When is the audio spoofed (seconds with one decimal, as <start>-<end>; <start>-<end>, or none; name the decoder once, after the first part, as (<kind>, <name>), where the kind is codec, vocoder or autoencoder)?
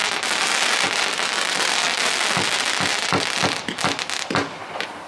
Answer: none